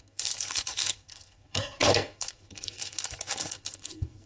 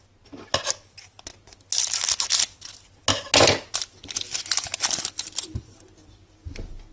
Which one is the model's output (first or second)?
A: first